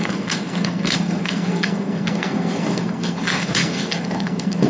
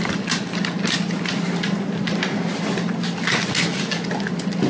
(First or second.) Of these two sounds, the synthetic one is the first